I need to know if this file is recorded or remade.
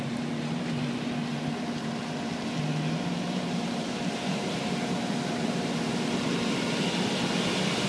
remade